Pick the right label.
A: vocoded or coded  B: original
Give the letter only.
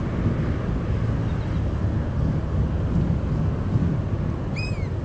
B